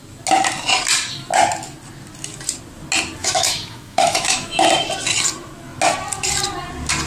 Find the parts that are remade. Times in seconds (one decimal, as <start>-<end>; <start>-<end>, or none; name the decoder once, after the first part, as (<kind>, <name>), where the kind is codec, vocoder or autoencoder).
3.2-4.7 (autoencoder, DAC-VAE)